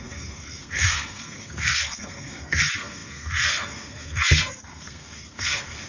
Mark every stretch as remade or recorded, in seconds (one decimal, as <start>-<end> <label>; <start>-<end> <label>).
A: 0.0-5.9 remade